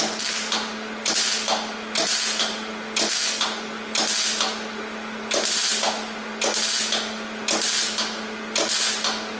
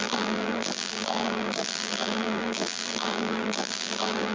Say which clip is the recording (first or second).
first